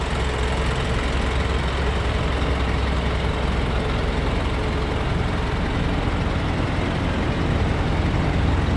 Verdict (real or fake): real